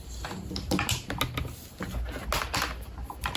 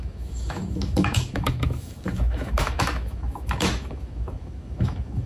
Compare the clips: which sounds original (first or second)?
first